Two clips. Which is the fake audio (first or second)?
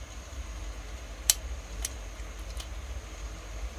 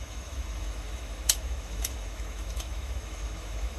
second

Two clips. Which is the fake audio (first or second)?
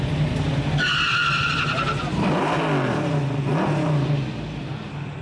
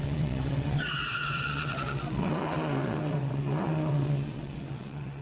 second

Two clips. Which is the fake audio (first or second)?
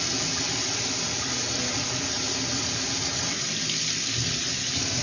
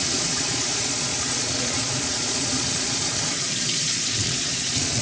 second